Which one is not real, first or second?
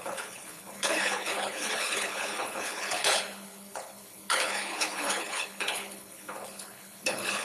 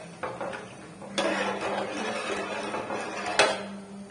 first